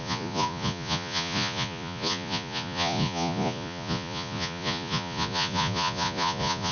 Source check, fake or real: fake